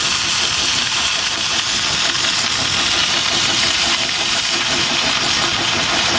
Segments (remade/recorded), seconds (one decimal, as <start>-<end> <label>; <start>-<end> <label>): 0.0-0.7 recorded; 0.7-1.8 remade; 1.8-3.0 recorded; 3.0-5.0 remade; 5.0-6.2 recorded